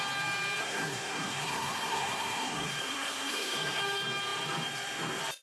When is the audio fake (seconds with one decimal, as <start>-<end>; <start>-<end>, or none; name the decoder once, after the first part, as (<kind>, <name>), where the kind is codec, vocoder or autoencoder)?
0.6-3.8 (codec, SNAC)